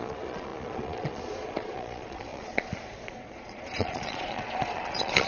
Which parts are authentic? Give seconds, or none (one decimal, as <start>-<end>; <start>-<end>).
none